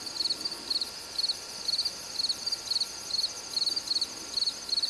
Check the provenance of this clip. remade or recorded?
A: recorded